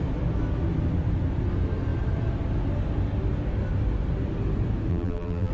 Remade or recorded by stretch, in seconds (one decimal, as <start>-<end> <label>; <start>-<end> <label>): 0.0-4.9 recorded; 4.9-5.5 remade